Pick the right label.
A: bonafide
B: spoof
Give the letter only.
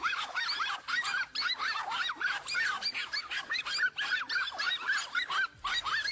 A